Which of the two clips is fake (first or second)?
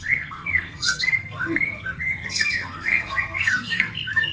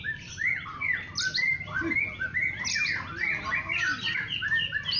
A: first